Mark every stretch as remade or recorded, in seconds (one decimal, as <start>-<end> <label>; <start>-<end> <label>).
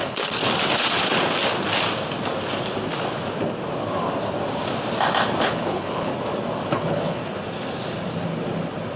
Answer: 0.0-0.4 remade; 0.4-5.4 recorded; 5.4-6.1 remade; 6.1-6.7 recorded; 6.7-7.2 remade; 7.2-9.0 recorded